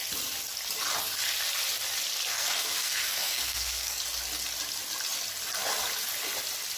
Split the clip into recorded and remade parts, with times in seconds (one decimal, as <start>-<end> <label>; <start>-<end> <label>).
0.0-2.3 recorded; 2.3-4.0 remade; 4.0-6.8 recorded